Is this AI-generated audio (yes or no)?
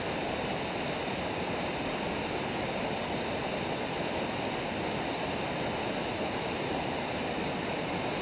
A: no